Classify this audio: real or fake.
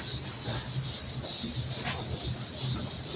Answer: real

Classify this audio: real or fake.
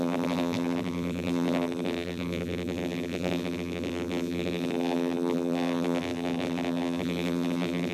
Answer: fake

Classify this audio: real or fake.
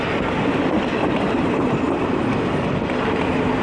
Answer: fake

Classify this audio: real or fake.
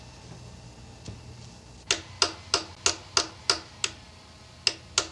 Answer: real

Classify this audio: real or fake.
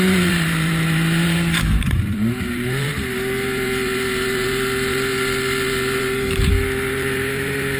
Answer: fake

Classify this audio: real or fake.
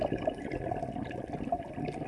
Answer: real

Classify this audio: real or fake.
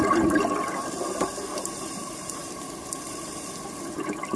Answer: fake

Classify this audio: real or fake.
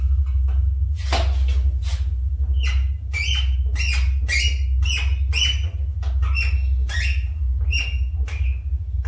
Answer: real